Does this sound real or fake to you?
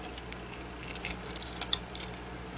real